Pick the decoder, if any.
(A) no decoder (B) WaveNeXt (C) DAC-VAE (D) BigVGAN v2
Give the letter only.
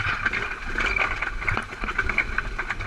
A